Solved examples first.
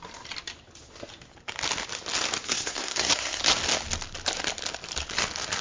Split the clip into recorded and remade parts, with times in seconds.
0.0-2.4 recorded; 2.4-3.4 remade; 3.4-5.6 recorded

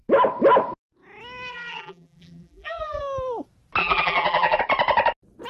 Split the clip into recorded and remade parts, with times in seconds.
0.0-1.5 recorded; 1.5-3.0 remade; 3.0-3.8 recorded; 3.8-4.6 remade; 4.6-5.5 recorded

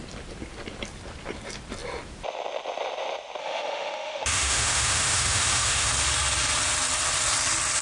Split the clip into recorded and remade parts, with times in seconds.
0.0-3.4 recorded; 3.4-5.9 remade; 5.9-7.8 recorded